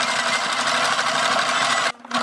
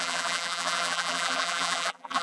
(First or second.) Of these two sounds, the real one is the first